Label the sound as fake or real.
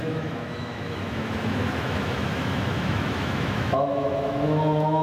fake